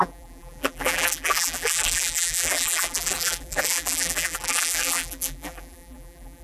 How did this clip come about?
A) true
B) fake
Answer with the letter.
B